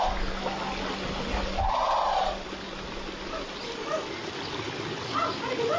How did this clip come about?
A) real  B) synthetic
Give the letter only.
A